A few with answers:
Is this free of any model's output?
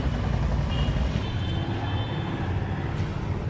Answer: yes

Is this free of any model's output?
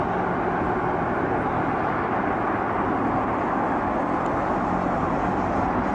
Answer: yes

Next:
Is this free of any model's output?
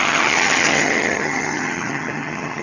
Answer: no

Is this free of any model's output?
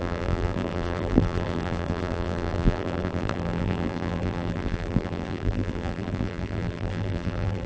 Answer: no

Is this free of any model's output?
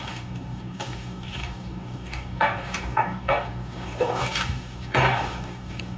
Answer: no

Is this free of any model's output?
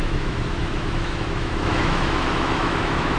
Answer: no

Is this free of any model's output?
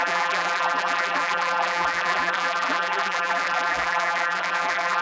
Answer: no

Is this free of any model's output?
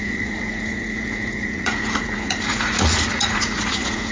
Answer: no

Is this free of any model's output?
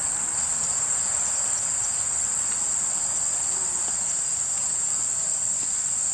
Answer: yes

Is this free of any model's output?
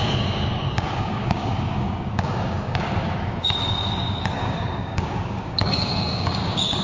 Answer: no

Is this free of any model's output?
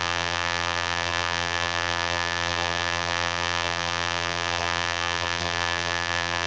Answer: no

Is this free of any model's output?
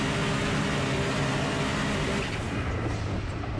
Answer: yes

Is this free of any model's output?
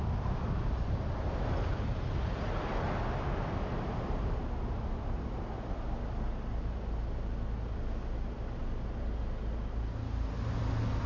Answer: yes